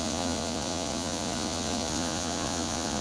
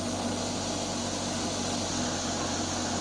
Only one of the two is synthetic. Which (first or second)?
first